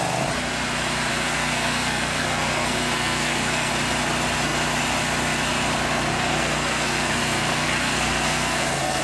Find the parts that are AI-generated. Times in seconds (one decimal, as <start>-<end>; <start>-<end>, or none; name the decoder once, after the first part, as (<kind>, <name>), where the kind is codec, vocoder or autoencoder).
1.1-3.7 (codec, SNAC); 6.1-9.0